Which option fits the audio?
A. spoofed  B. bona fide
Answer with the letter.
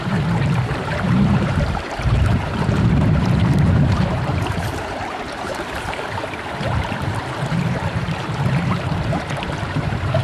A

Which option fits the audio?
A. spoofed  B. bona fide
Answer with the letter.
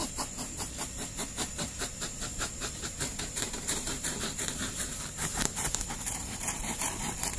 A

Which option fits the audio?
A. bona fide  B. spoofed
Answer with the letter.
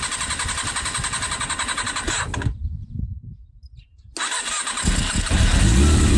A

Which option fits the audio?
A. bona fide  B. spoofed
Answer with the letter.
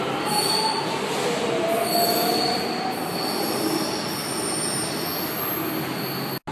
A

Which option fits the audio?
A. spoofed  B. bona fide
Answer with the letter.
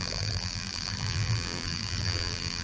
A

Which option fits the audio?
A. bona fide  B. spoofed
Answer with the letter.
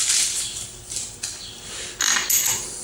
A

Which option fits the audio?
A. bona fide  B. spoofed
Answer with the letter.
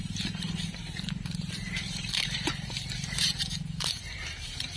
B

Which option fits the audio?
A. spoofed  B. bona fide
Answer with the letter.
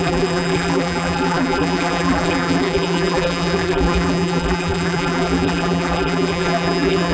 A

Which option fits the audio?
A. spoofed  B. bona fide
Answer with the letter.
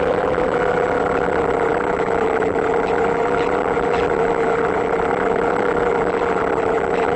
A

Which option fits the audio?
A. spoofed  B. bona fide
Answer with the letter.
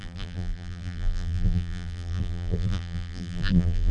A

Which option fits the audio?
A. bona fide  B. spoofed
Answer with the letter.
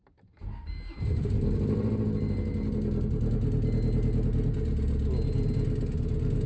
A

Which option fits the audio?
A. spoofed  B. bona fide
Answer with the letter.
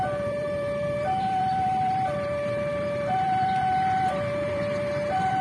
A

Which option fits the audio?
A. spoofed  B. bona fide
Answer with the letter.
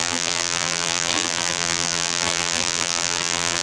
A